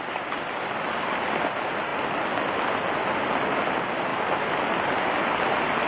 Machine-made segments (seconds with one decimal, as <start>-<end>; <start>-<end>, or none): none